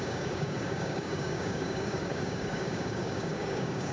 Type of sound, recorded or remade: remade